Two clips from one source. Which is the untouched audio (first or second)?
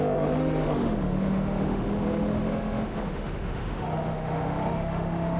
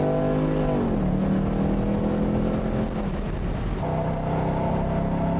second